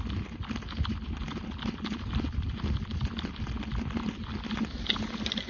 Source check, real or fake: real